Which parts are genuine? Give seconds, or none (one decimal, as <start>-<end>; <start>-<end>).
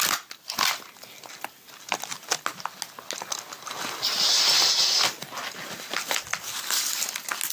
0.0-7.5